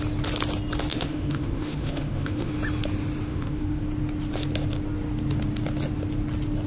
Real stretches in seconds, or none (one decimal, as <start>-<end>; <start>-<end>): 0.0-0.9; 2.5-3.3; 3.8-6.7